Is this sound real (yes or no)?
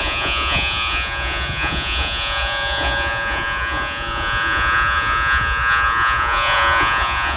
no